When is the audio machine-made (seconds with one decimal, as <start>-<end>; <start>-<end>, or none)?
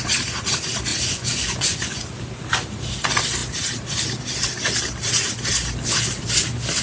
0.9-2.0